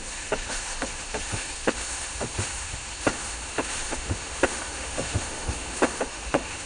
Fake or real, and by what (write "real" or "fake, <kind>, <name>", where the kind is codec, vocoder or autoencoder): fake, autoencoder, DAC-VAE